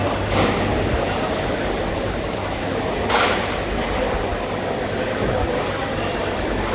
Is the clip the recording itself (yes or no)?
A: yes